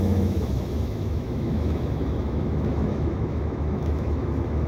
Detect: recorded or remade remade